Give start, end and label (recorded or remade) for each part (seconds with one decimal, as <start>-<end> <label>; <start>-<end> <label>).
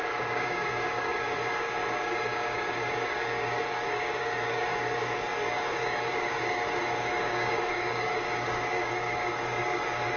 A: 0.0-10.2 remade